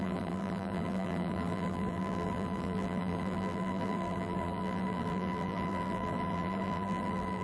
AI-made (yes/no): yes